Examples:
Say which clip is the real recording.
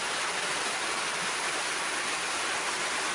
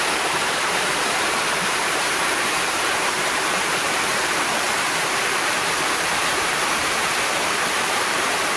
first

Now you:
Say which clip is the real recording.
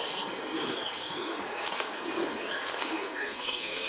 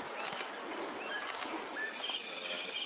second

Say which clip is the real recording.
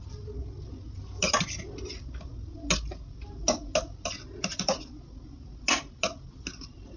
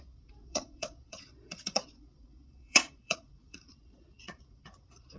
first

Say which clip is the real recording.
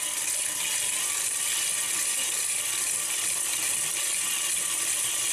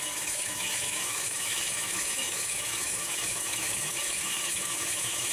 first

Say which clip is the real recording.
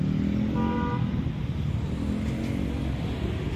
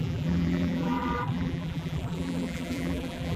first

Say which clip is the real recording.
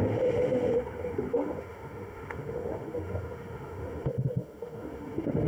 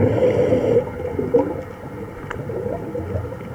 second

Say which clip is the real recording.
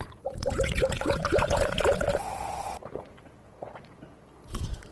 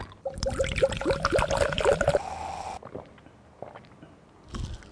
second